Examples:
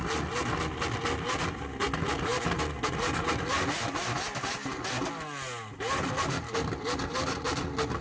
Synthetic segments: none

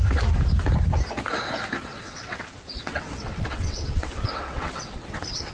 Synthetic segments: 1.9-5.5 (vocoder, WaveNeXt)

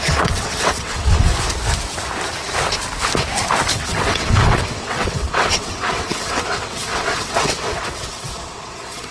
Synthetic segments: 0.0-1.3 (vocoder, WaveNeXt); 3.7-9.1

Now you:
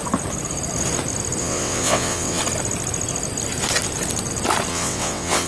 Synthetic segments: 1.4-2.4 (vocoder, WaveNeXt); 4.7-5.5